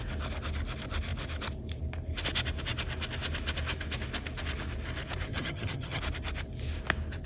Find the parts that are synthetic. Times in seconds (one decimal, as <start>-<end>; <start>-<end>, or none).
5.3-6.0